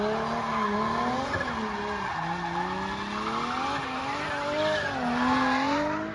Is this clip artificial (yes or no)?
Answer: no